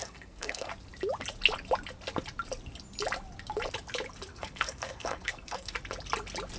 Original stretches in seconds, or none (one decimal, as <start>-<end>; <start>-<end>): 0.7-4.3; 5.7-6.6

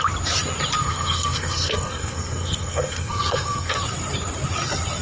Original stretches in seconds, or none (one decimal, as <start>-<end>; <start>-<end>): 0.0-0.8; 3.8-5.0